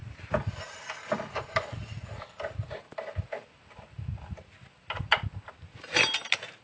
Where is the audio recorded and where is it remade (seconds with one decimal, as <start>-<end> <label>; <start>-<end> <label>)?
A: 0.0-1.7 recorded; 1.7-2.2 remade; 2.2-6.6 recorded